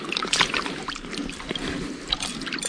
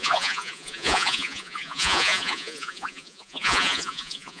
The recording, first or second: first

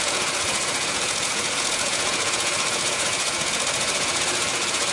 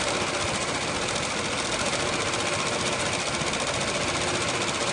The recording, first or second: second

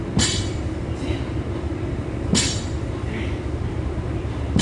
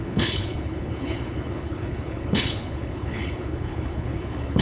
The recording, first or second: first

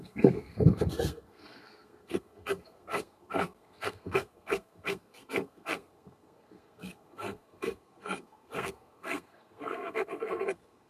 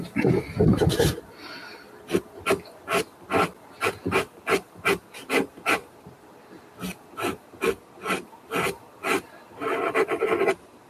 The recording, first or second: second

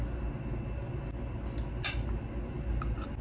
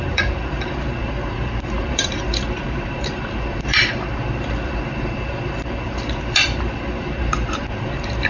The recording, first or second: first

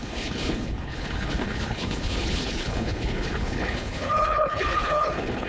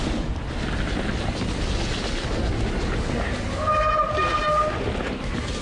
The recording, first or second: second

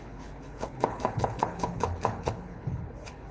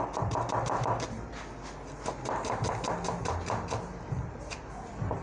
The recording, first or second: second